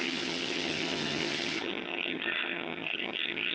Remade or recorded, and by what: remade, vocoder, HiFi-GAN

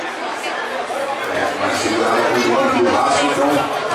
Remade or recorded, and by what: recorded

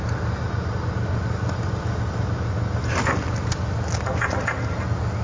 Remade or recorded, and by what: recorded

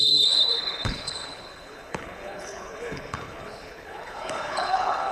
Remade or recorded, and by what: remade, codec, HILCodec